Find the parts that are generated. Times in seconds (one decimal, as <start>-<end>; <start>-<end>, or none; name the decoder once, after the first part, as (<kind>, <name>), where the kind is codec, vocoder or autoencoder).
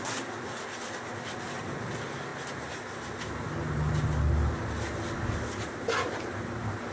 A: none